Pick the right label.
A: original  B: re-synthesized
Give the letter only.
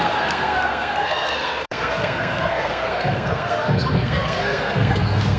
B